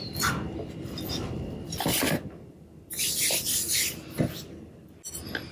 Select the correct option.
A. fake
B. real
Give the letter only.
B